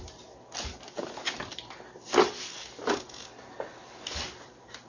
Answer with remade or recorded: recorded